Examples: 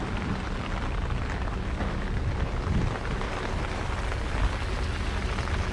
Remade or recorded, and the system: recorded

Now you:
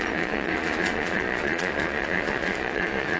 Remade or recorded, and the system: remade, vocoder, Vocos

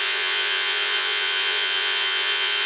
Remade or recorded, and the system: remade, vocoder, Vocos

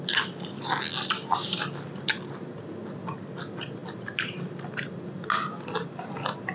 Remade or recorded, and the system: recorded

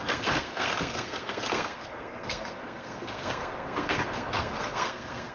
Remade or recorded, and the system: remade, codec, SNAC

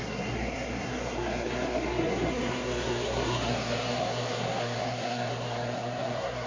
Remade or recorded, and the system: remade, codec, SNAC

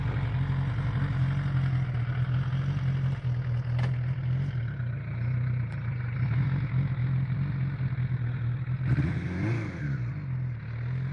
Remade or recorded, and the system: recorded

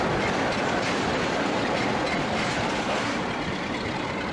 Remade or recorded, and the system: recorded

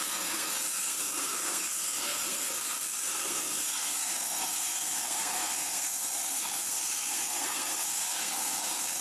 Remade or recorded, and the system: remade, codec, SNAC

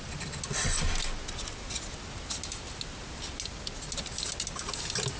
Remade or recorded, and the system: recorded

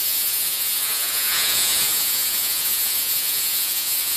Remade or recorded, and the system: remade, vocoder, Vocos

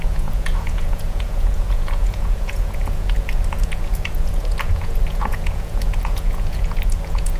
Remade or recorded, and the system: remade, vocoder, Vocos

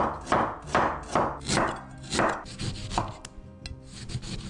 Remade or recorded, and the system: recorded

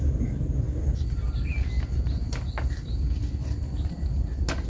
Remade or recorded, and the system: recorded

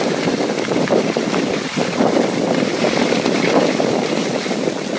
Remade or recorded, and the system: recorded